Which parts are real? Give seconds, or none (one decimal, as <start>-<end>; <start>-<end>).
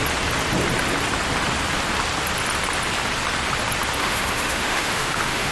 0.0-4.0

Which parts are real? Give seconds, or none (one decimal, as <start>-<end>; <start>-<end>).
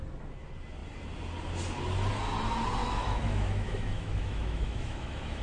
0.0-2.8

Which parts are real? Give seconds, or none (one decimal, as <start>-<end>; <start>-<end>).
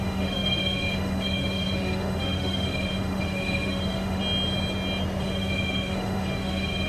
4.2-5.2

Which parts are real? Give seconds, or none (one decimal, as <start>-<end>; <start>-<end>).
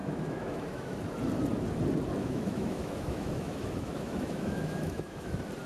1.0-2.2; 5.3-5.7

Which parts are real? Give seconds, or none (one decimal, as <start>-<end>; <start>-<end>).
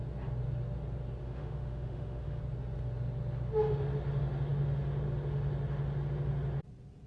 0.0-1.2; 2.4-7.1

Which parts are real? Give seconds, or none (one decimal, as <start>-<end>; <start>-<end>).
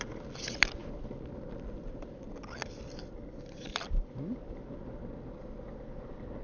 0.0-6.4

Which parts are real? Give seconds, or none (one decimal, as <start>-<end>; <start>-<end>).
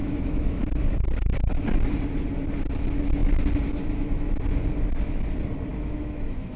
0.6-5.7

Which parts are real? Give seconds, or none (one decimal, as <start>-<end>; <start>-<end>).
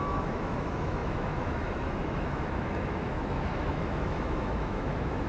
none